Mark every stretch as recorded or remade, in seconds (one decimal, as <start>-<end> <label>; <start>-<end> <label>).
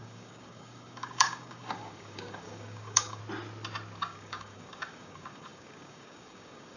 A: 0.0-3.2 remade; 3.2-4.0 recorded; 4.0-6.8 remade